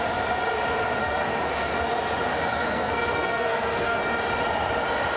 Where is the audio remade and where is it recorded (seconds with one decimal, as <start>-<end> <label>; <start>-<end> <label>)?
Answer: 0.0-1.0 recorded; 1.0-1.7 remade; 1.7-2.3 recorded; 2.3-4.0 remade; 4.0-5.2 recorded

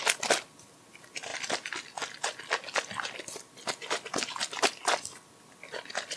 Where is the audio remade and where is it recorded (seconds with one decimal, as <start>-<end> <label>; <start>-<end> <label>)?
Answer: 0.0-6.2 recorded

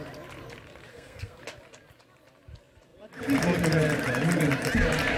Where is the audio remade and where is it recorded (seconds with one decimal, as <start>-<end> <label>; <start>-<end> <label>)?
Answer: 0.0-0.9 recorded; 0.9-1.4 remade; 1.4-5.2 recorded

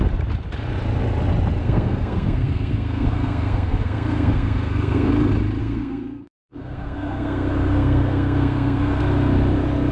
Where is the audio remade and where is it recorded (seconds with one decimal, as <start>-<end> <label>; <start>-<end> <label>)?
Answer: 0.0-1.6 recorded; 1.6-5.1 remade; 5.1-5.6 recorded; 5.6-9.0 remade; 9.0-9.9 recorded

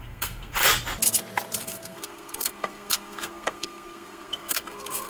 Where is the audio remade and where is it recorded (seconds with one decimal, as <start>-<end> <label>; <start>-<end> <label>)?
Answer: 0.0-0.6 remade; 0.6-1.6 recorded; 1.6-5.1 remade

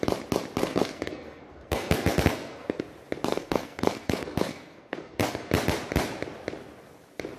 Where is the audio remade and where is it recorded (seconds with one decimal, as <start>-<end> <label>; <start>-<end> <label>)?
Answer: 0.0-0.6 recorded; 0.6-2.8 remade; 2.8-3.3 recorded; 3.3-5.5 remade; 5.5-7.4 recorded

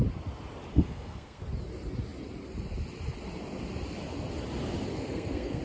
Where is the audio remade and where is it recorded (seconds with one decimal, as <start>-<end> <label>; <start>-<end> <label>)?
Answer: 0.0-0.7 recorded; 0.7-1.4 remade; 1.4-4.9 recorded; 4.9-5.6 remade

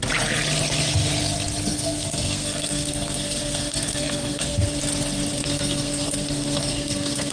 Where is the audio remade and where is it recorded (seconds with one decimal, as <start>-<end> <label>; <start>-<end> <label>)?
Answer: 0.0-1.7 recorded; 1.7-4.8 remade; 4.8-5.3 recorded; 5.3-7.3 remade